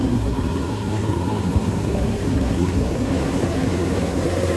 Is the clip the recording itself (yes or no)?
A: no